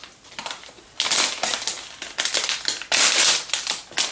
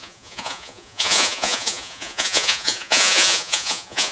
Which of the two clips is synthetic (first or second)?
second